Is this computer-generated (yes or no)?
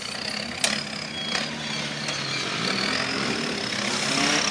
no